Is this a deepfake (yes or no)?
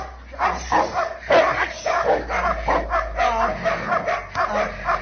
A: no